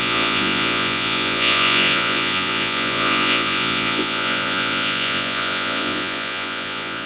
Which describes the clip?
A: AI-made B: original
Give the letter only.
A